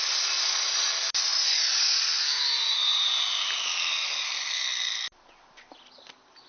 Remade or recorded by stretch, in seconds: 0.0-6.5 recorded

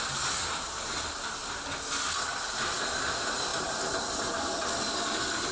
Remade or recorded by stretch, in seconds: 0.0-5.5 recorded